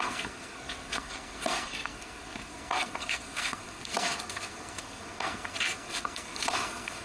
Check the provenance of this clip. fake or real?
fake